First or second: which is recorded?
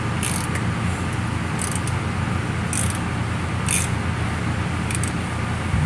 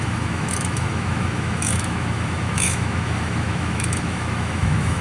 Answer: first